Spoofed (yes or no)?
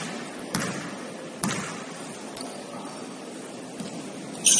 yes